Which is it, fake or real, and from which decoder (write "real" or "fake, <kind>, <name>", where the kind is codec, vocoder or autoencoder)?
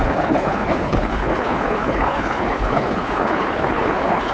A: fake, codec, HILCodec